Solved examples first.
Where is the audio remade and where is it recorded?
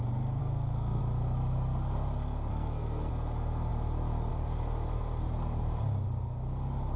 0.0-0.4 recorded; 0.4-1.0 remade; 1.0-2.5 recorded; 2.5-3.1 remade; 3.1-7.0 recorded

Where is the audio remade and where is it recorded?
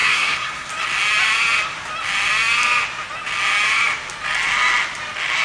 0.0-0.7 remade; 0.7-5.4 recorded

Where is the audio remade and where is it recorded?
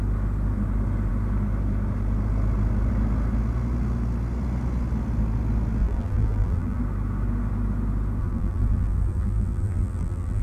0.0-5.8 recorded; 5.8-6.8 remade; 6.8-8.2 recorded; 8.2-10.4 remade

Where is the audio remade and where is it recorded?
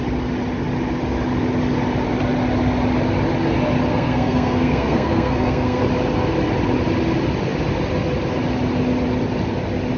0.0-3.9 recorded; 3.9-5.8 remade; 5.8-10.0 recorded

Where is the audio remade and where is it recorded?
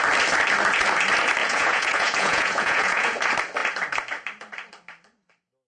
0.0-1.4 recorded; 1.4-3.2 remade; 3.2-5.7 recorded